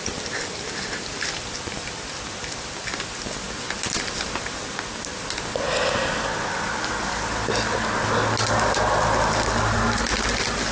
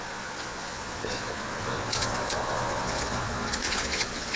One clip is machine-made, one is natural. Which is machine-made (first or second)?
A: second